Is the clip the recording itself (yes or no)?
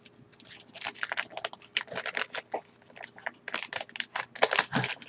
yes